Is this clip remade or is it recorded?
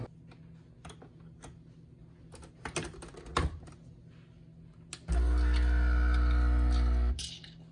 recorded